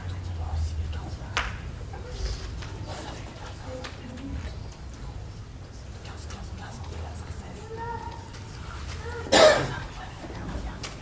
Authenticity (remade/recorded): recorded